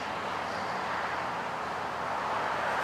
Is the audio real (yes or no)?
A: yes